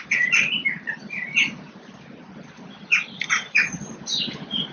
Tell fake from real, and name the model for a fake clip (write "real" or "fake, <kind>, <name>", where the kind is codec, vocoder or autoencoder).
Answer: fake, vocoder, BigVGAN v2